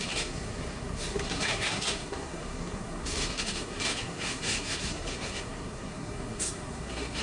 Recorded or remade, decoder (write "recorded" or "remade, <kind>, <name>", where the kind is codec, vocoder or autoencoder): remade, codec, SNAC